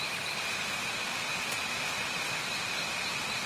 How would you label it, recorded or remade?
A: recorded